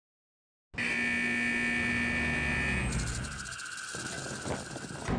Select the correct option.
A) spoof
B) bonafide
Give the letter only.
B